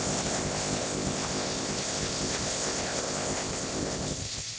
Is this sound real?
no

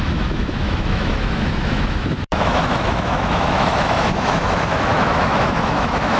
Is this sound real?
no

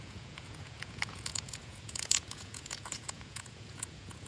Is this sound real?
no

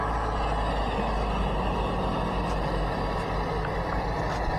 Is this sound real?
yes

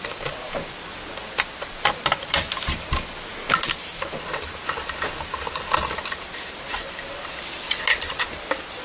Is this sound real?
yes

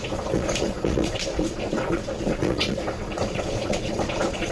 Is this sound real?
no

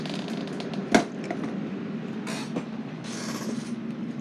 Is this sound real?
yes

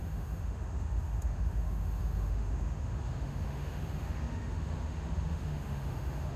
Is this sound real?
no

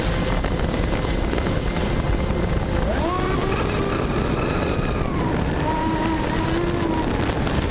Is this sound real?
yes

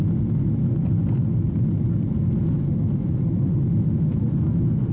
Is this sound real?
yes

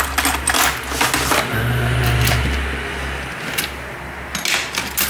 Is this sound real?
yes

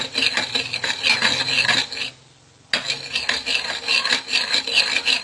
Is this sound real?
yes